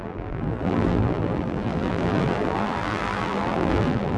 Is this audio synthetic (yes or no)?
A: yes